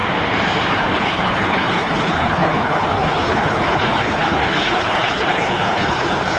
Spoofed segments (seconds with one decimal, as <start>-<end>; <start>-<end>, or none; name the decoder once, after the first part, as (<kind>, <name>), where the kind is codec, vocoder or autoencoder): 0.8-6.4 (codec, HILCodec)